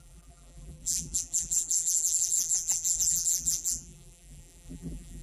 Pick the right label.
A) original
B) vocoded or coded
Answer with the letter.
B